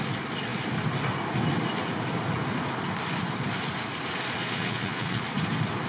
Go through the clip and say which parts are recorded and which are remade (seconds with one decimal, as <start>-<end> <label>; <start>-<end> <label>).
0.0-4.4 recorded; 4.4-5.2 remade; 5.2-5.9 recorded

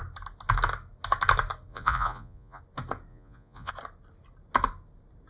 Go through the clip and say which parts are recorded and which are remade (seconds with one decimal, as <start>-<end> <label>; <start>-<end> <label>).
0.0-1.7 recorded; 1.7-2.6 remade; 2.6-3.1 recorded; 3.1-3.7 remade; 3.7-5.3 recorded

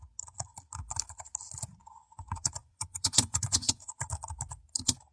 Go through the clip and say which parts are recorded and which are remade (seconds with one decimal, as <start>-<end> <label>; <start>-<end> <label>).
0.0-1.8 recorded; 1.8-3.9 remade; 3.9-5.1 recorded

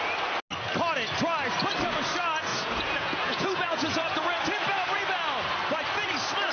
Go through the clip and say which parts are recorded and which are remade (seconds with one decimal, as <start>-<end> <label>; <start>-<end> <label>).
0.0-2.5 recorded; 2.5-4.4 remade; 4.4-6.5 recorded

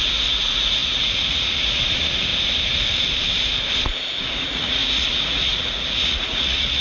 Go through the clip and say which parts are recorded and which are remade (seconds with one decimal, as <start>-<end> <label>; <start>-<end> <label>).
0.0-2.3 remade; 2.3-4.2 recorded; 4.2-6.8 remade

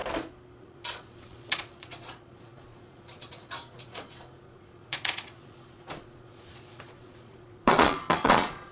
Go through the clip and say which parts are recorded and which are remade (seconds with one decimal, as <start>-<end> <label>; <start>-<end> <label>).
0.0-0.6 recorded; 0.6-8.7 remade

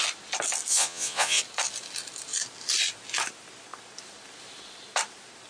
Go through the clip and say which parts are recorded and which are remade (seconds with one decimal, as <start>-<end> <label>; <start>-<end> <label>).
0.0-0.7 recorded; 0.7-1.4 remade; 1.4-5.5 recorded

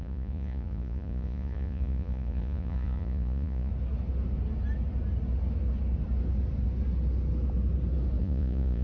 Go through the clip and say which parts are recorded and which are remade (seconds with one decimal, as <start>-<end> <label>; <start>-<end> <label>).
0.0-3.7 remade; 3.7-8.2 recorded; 8.2-8.8 remade